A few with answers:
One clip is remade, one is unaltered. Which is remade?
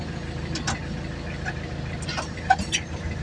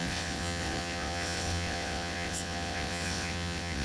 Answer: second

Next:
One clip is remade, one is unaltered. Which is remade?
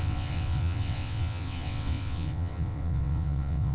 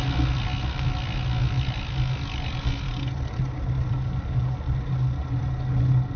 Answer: first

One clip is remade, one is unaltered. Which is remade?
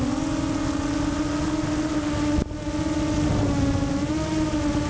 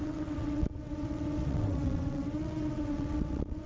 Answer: second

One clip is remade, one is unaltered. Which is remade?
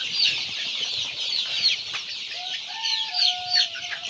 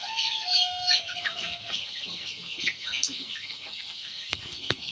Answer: second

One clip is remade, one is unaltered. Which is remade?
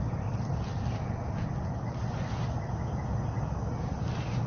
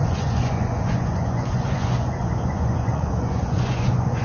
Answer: second